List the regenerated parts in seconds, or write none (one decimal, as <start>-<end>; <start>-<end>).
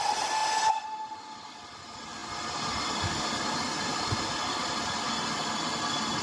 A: none